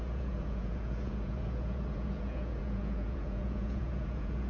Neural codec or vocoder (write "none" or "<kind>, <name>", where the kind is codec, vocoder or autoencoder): vocoder, Vocos